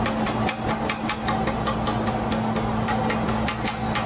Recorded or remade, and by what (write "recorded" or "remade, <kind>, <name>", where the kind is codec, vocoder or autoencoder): recorded